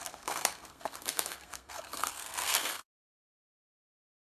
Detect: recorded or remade remade